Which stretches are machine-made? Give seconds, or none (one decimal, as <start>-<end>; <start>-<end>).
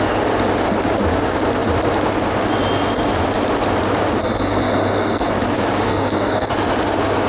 4.2-5.3; 5.9-6.5